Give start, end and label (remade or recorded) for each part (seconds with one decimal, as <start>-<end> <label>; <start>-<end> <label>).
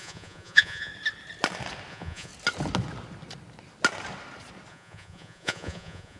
0.0-0.9 remade; 0.9-1.9 recorded; 1.9-2.3 remade; 2.3-4.7 recorded; 4.7-6.2 remade